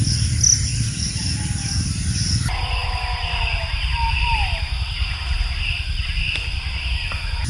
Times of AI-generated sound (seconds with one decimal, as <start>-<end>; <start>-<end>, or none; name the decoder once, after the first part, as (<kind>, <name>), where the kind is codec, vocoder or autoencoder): none